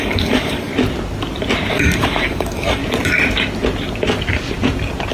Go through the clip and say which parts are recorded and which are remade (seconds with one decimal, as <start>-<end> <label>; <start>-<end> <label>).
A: 0.0-0.7 remade; 0.7-1.7 recorded; 1.7-2.8 remade; 2.8-5.1 recorded